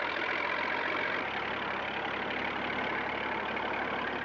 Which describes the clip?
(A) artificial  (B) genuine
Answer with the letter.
B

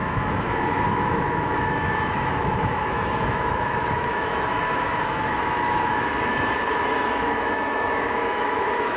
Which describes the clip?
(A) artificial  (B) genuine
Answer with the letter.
A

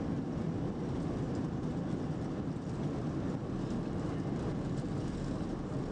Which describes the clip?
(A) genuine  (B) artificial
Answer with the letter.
A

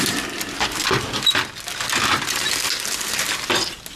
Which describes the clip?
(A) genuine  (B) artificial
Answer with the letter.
A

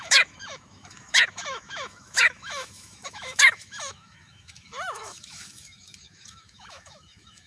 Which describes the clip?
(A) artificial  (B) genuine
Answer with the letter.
A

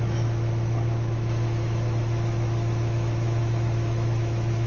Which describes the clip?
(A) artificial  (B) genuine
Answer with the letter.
A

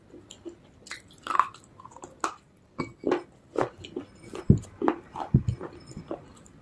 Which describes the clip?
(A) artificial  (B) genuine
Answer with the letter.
B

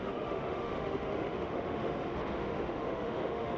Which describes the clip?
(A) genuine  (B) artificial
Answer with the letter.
B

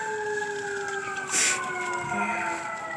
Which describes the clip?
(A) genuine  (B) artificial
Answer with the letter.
A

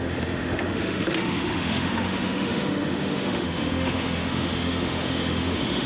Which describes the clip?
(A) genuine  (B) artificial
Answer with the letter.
B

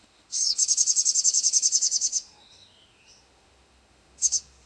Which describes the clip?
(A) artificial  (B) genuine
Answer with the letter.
A